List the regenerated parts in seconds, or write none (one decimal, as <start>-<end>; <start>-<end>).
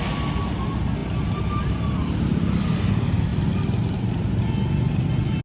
none